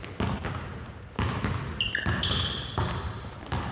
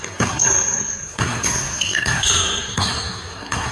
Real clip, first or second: first